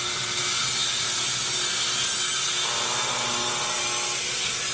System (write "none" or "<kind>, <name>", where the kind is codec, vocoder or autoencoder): none